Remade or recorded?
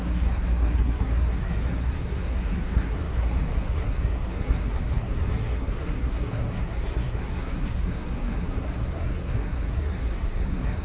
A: remade